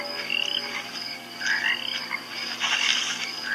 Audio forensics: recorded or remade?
recorded